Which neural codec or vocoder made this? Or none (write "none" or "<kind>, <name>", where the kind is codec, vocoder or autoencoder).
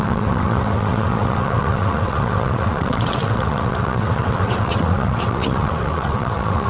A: vocoder, WaveNeXt